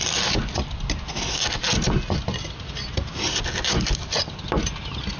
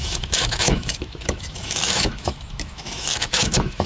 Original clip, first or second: first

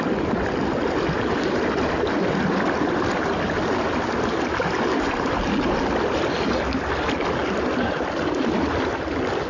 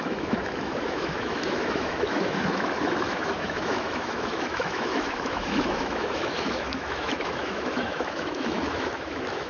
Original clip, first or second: first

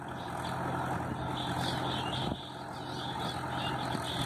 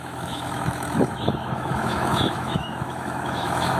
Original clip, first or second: first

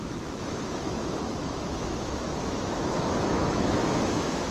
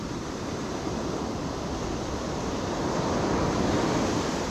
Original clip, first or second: second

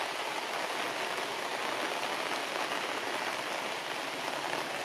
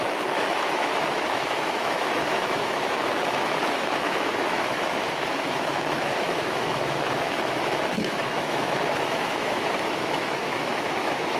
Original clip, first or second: first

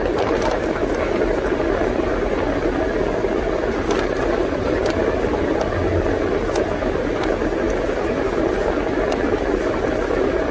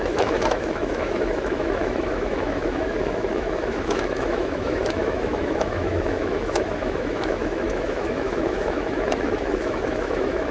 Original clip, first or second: first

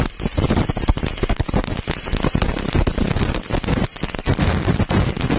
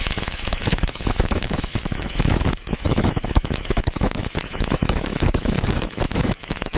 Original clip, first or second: first